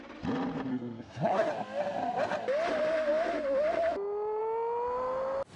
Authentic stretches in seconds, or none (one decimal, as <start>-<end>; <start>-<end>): 0.0-0.7; 1.5-5.6